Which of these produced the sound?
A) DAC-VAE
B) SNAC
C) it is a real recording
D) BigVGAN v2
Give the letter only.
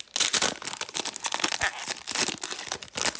C